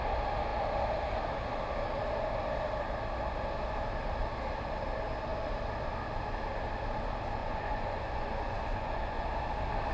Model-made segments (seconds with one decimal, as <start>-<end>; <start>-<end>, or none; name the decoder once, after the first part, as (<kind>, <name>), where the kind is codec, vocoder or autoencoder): 7.4-9.2 (vocoder, Vocos)